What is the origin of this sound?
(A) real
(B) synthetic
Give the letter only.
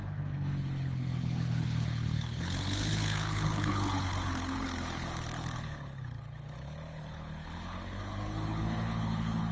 B